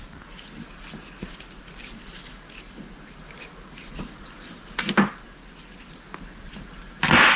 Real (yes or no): yes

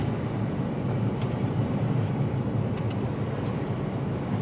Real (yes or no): yes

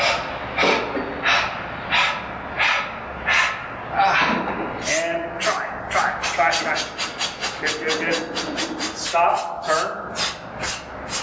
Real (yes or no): yes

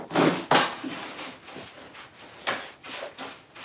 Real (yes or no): yes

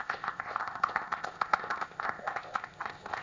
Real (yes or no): no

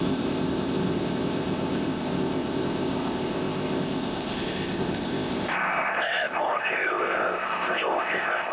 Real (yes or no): no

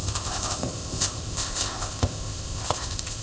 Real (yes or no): no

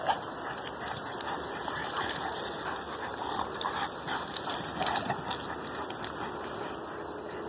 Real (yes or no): yes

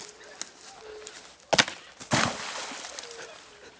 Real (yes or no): yes